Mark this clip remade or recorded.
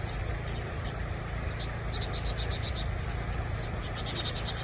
recorded